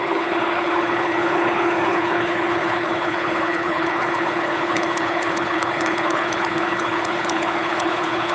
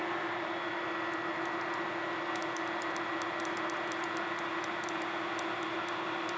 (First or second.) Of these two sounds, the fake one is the first